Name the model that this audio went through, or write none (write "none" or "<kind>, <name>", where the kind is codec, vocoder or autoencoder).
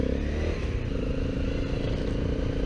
none